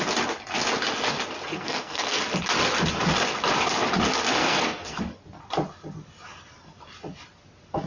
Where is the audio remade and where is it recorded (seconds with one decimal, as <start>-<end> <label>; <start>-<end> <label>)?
0.0-1.5 recorded; 1.5-2.2 remade; 2.2-4.4 recorded; 4.4-5.0 remade; 5.0-7.9 recorded